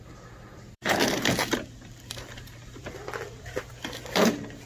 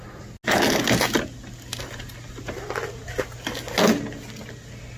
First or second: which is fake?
first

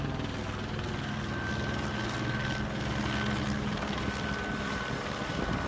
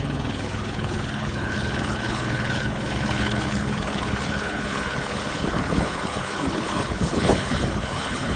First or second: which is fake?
second